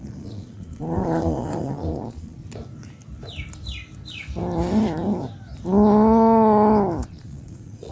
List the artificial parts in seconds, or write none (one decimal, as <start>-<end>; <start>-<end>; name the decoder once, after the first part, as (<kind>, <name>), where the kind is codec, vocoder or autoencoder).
0.0-2.4 (vocoder, Vocos); 7.1-7.9